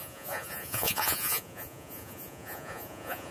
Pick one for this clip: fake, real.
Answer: fake